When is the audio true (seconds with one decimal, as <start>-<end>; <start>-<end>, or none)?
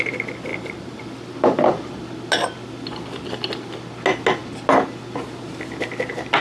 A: 0.0-0.5; 1.0-6.4